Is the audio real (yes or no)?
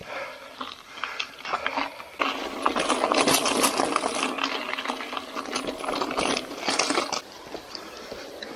yes